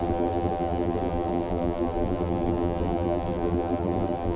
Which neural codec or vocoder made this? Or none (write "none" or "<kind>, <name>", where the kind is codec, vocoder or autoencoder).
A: vocoder, BigVGAN v2